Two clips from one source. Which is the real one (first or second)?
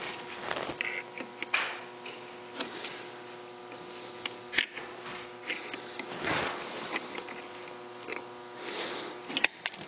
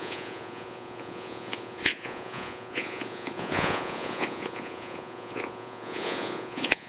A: first